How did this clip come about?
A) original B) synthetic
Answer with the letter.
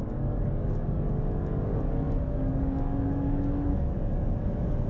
B